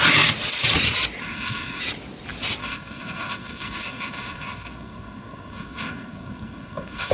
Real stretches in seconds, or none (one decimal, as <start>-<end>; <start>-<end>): 0.0-1.2; 1.8-2.6